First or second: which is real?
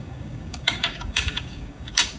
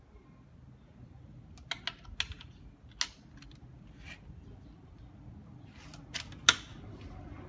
second